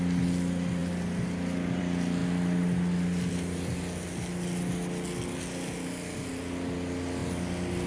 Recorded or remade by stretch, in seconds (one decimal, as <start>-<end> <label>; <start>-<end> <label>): 0.0-7.9 recorded

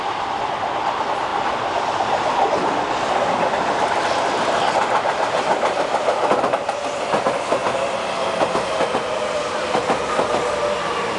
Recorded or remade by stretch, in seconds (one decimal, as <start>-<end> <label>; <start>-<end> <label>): 0.0-11.2 recorded

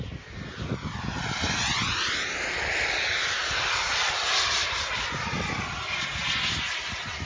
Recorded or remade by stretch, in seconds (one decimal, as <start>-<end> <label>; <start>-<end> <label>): 0.0-1.7 recorded; 1.7-2.2 remade; 2.2-4.6 recorded; 4.6-5.2 remade; 5.2-7.3 recorded

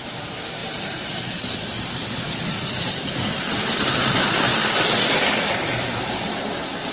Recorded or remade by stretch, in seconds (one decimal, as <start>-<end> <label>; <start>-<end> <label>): 0.0-4.5 remade; 4.5-5.1 recorded; 5.1-6.9 remade